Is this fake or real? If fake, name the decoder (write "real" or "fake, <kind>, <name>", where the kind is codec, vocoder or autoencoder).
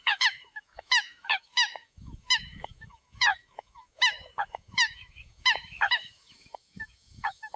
fake, autoencoder, DAC-VAE